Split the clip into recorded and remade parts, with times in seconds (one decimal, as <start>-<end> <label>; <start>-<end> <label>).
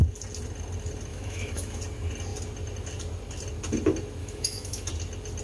0.0-1.1 recorded; 1.1-1.8 remade; 1.8-4.2 recorded; 4.2-4.9 remade; 4.9-5.4 recorded